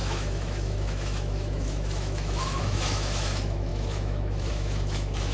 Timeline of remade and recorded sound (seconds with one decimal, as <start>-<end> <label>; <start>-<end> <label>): 0.0-5.3 remade